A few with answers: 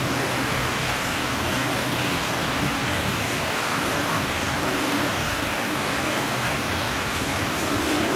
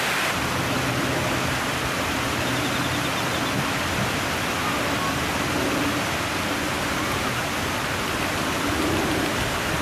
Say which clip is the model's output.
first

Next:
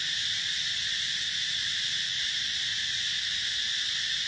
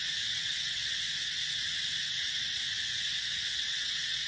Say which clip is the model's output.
second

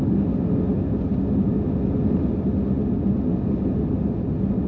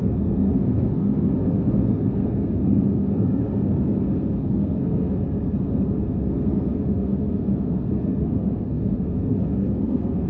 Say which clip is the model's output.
second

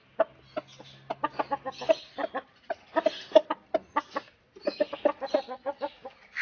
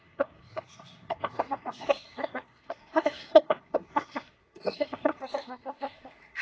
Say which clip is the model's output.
second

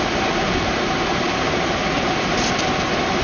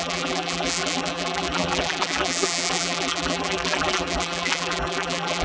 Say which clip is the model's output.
second